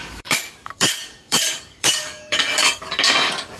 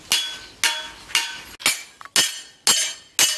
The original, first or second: second